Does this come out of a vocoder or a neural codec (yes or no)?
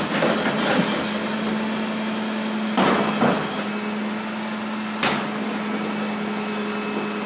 no